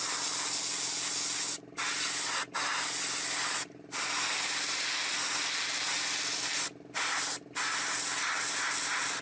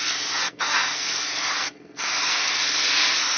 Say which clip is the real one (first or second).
first